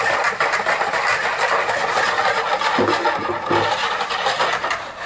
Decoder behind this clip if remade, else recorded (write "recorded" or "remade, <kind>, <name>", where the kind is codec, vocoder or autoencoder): recorded